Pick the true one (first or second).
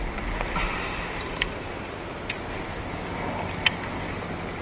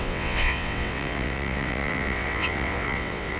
first